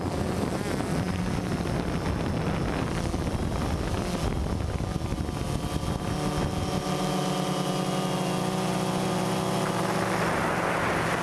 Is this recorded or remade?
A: recorded